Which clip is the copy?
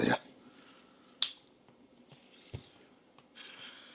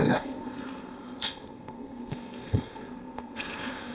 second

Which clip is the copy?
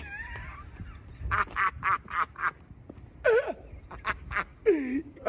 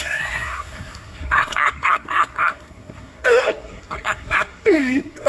second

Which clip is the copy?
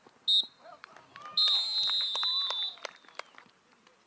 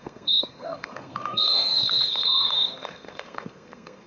second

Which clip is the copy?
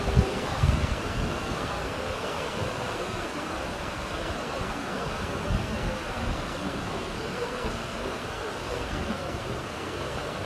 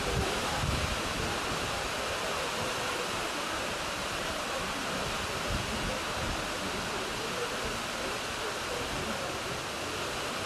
first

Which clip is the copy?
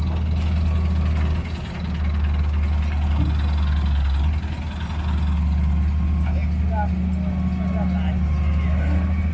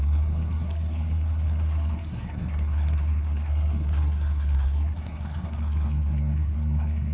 second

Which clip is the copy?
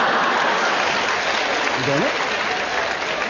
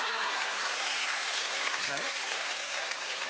second